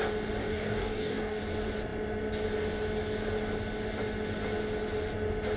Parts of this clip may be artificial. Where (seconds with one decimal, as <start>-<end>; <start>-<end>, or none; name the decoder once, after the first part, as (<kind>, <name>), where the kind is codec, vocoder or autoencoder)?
0.4-1.4 (codec, DAC)